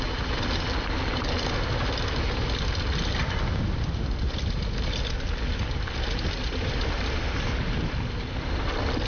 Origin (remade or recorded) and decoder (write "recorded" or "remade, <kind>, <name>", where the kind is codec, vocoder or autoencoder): recorded